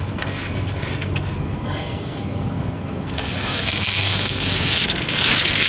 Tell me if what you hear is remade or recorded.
remade